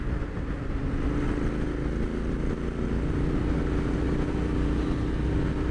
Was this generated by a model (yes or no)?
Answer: no